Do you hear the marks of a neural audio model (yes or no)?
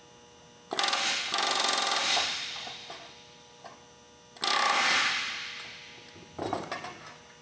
no